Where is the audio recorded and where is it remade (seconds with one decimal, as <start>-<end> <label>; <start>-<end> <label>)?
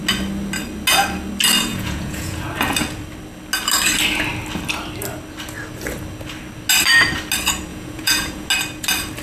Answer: 0.0-1.7 recorded; 1.7-2.4 remade; 2.4-7.7 recorded; 7.7-8.5 remade; 8.5-9.2 recorded